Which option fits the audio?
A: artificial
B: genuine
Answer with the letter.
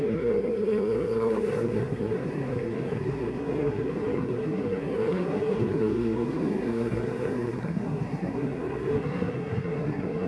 A